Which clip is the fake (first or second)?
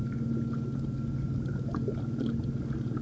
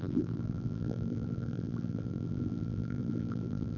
second